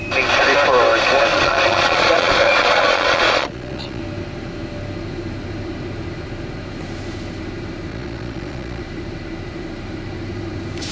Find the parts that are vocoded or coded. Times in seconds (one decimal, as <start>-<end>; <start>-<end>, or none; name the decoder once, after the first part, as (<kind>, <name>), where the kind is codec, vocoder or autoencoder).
1.3-4.0 (vocoder, Vocos); 7.9-8.8